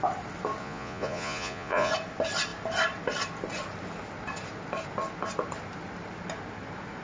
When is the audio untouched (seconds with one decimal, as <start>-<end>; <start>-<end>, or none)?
0.0-0.6; 1.9-7.0